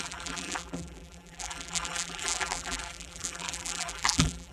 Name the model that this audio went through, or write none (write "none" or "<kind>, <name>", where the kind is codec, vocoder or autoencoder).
vocoder, BigVGAN v2